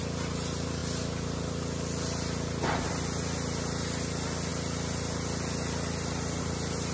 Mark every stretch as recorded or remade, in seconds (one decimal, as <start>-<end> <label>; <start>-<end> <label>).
0.0-6.9 recorded